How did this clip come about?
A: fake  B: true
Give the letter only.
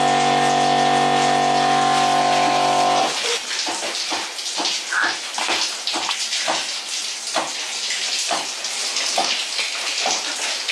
B